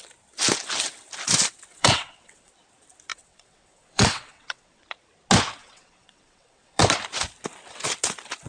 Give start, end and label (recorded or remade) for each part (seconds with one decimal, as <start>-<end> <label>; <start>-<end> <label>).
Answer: 0.0-1.7 recorded; 1.7-2.5 remade; 2.5-3.1 recorded; 3.1-4.8 remade; 4.8-5.6 recorded; 5.6-6.8 remade; 6.8-8.5 recorded